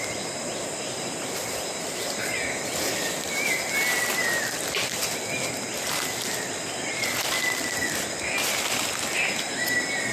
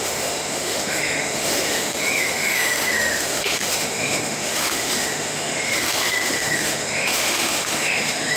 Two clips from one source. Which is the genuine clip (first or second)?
first